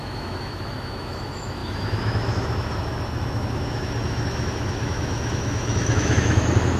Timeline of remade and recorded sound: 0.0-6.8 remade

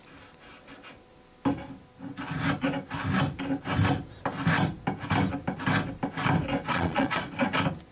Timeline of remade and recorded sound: 0.0-6.7 recorded; 6.7-7.2 remade; 7.2-7.9 recorded

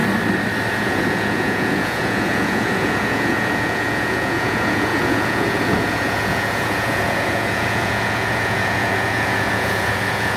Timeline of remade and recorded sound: 0.0-0.7 recorded; 0.7-10.4 remade

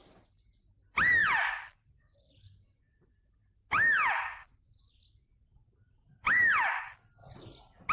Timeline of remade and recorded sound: 0.0-1.2 recorded; 1.2-1.9 remade; 1.9-7.2 recorded; 7.2-7.9 remade